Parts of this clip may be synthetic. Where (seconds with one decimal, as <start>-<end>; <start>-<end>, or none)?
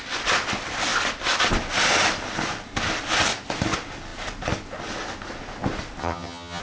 6.0-6.6